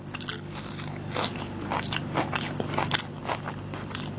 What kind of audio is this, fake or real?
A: real